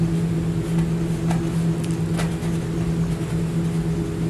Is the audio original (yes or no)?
yes